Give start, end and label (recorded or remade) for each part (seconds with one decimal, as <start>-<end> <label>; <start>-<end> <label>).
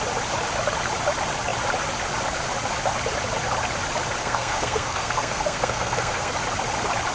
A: 0.0-4.2 recorded; 4.2-6.3 remade; 6.3-7.1 recorded